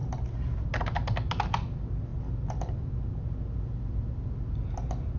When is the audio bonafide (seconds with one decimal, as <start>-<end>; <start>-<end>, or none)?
0.0-5.2